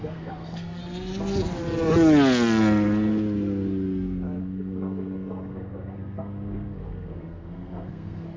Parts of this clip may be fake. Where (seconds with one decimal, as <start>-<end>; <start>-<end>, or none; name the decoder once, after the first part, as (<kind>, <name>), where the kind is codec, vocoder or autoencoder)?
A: 0.0-0.8 (codec, SNAC); 4.4-8.4